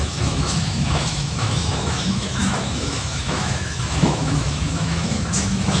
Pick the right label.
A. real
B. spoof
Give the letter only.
B